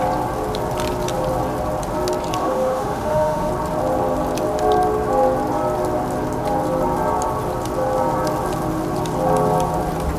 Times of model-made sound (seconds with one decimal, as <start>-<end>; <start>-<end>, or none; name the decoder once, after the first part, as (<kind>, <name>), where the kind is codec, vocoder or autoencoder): 2.4-3.5 (autoencoder, DAC-VAE)